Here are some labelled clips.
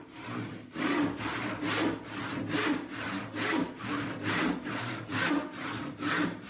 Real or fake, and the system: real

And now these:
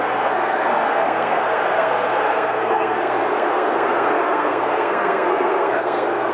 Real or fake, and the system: fake, codec, SNAC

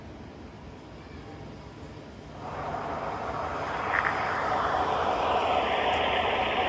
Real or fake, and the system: real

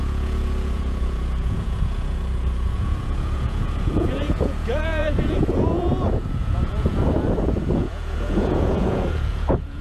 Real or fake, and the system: fake, vocoder, Vocos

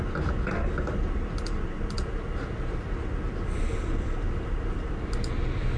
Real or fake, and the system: real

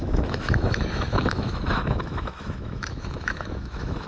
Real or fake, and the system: fake, autoencoder, DAC-VAE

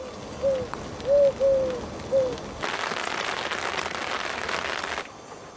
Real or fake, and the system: real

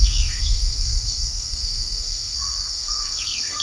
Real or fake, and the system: fake, codec, SNAC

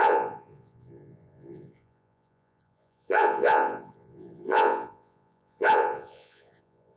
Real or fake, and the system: fake, vocoder, Vocos